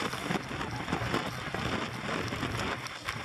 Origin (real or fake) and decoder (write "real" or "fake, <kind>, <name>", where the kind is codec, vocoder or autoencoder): real